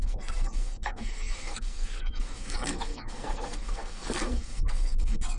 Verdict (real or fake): fake